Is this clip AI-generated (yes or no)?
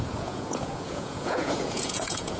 yes